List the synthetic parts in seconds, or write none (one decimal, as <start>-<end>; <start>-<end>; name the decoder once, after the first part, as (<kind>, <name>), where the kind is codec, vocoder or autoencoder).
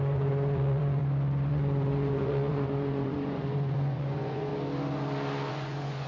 0.0-1.0 (vocoder, Vocos); 1.5-4.5; 5.5-6.1